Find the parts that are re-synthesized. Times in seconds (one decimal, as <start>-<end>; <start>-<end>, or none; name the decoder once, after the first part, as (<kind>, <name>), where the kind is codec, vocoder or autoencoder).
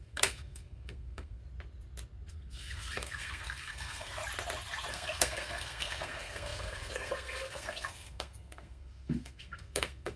0.0-1.4 (codec, SNAC); 2.3-4.2; 4.9-10.2